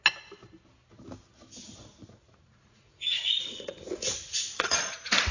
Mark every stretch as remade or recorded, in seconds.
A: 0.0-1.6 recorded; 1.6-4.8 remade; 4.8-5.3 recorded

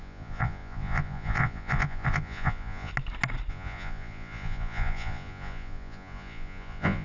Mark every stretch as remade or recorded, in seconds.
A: 0.0-2.9 remade; 2.9-3.5 recorded; 3.5-7.0 remade

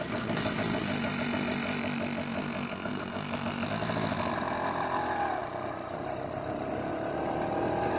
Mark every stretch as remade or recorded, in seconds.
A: 0.0-8.0 recorded